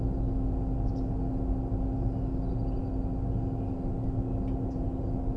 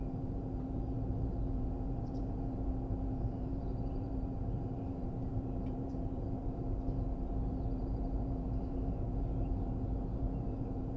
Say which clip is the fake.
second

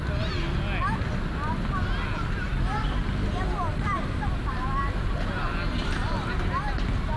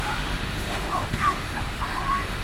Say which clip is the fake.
second